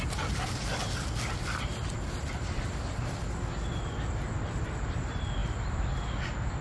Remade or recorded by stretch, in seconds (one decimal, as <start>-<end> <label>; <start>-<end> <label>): 0.0-6.6 recorded